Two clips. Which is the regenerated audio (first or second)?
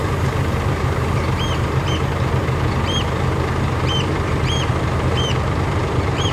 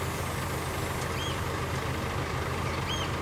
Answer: first